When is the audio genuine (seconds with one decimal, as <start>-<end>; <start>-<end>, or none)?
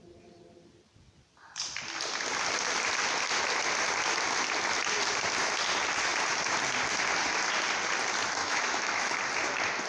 0.0-8.4; 9.2-9.9